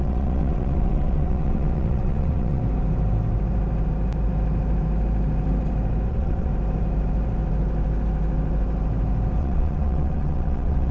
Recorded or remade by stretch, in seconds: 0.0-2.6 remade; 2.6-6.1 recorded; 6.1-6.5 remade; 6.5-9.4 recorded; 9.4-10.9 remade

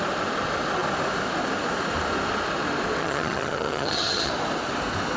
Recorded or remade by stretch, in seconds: 0.0-3.0 recorded; 3.0-4.3 remade; 4.3-5.2 recorded

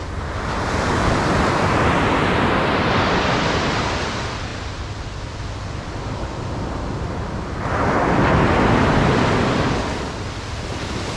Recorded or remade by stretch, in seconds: 0.0-4.5 remade; 4.5-6.3 recorded; 6.3-11.2 remade

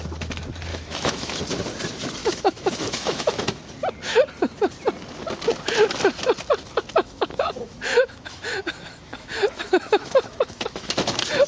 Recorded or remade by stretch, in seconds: 0.0-0.7 recorded; 0.7-1.4 remade; 1.4-2.2 recorded; 2.2-3.6 remade; 3.6-7.0 recorded; 7.0-10.9 remade; 10.9-11.5 recorded